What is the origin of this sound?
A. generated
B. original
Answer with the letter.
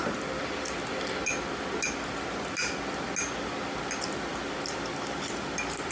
B